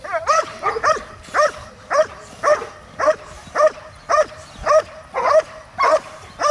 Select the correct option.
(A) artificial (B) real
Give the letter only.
B